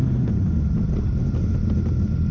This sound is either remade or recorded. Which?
recorded